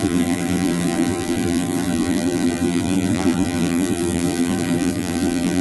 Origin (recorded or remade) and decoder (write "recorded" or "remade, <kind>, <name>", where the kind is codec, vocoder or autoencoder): remade, vocoder, BigVGAN v2